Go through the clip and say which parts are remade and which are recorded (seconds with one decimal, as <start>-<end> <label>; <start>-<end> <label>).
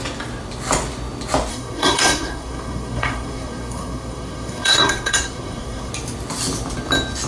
0.0-1.5 recorded; 1.5-5.9 remade; 5.9-7.3 recorded